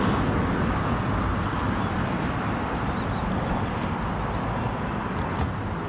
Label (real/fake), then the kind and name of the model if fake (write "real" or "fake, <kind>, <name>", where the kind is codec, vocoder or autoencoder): real